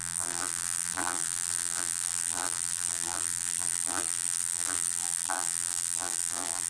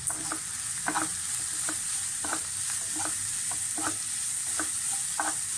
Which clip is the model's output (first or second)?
first